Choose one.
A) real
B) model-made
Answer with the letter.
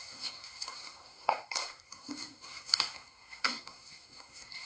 B